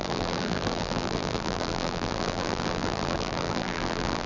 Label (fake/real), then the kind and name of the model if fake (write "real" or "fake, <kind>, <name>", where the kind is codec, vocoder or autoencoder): fake, vocoder, BigVGAN v2